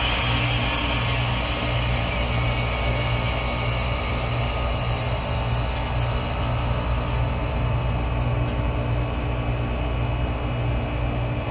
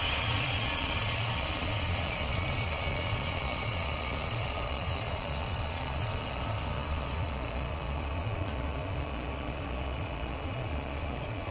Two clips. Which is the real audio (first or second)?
first